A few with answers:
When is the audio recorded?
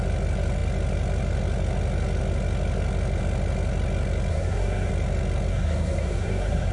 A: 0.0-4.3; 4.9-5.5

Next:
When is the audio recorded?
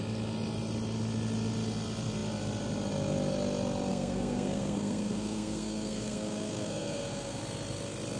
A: 0.0-3.9; 7.4-8.2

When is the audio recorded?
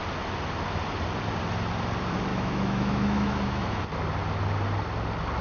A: 0.0-2.3; 3.8-5.4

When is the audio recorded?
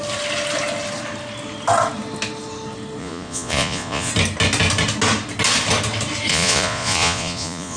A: 0.0-3.0; 4.1-6.3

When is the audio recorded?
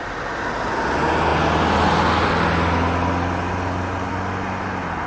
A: 0.0-5.1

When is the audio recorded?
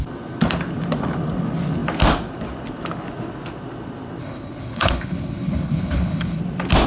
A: 0.0-4.2; 6.4-6.9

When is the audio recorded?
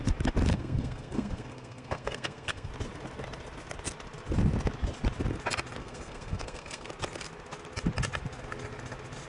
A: 0.0-0.5; 2.7-5.8; 6.9-9.3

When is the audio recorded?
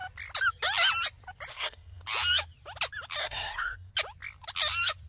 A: 0.0-1.5; 2.0-3.2; 3.9-5.1